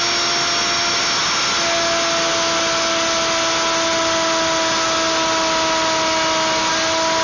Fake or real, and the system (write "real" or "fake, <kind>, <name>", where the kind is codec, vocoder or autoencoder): real